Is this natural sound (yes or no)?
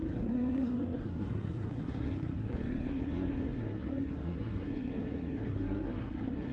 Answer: no